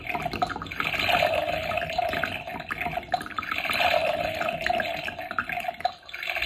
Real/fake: real